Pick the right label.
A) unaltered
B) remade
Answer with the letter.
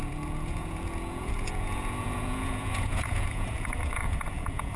B